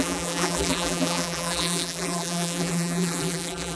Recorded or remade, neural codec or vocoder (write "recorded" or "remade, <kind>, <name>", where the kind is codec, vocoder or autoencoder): remade, vocoder, BigVGAN v2